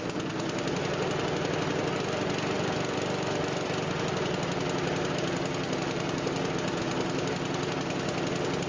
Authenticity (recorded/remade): recorded